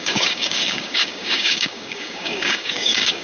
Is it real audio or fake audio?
fake